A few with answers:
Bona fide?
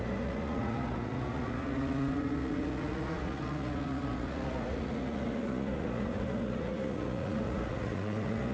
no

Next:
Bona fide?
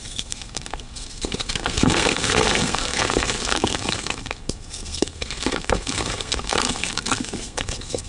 no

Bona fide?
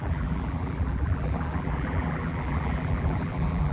no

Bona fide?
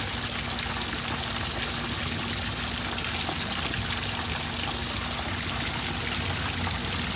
yes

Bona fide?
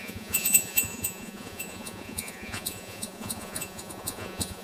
no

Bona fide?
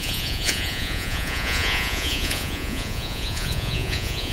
no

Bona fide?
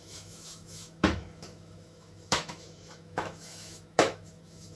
no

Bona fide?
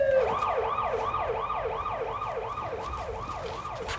yes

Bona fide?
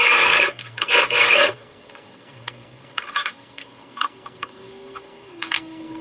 no